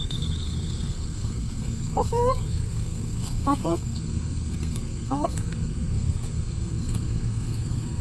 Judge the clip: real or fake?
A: fake